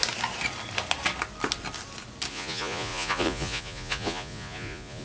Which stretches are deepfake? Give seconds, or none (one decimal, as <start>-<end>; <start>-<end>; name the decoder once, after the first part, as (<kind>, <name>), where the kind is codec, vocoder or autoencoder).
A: 2.3-5.0 (vocoder, Vocos)